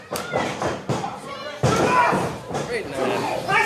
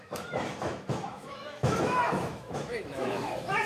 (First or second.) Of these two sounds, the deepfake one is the second